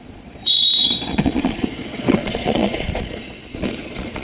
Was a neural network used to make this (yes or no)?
yes